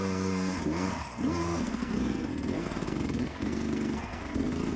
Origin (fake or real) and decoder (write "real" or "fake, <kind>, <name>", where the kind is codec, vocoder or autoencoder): fake, codec, SNAC